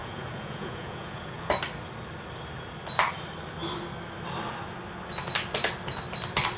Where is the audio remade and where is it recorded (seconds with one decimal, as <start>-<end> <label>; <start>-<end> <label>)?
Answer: 0.0-1.5 remade; 1.5-6.6 recorded